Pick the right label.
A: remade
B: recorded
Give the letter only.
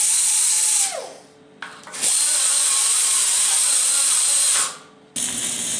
B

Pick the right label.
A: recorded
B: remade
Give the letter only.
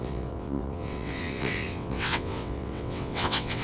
B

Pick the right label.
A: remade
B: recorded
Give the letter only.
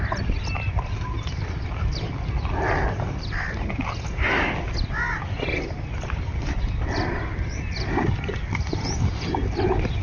B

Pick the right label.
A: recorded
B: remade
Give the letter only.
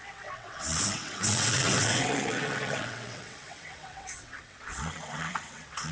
B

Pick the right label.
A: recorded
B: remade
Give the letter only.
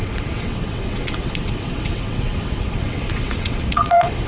B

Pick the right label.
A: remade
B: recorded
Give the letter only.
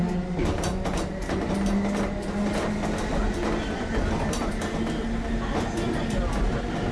B